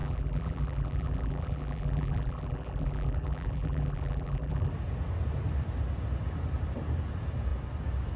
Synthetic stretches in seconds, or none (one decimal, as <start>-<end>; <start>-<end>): 0.0-4.7